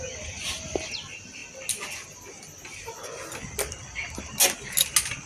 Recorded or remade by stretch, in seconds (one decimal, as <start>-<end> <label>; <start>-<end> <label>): 0.0-5.3 recorded